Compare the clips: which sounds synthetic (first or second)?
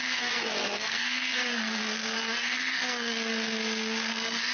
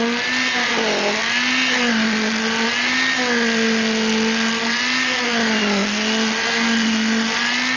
first